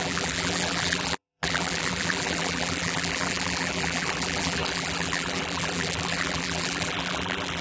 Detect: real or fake fake